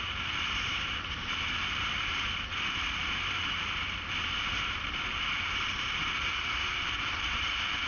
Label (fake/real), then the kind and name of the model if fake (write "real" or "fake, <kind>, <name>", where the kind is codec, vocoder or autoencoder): fake, vocoder, BigVGAN v2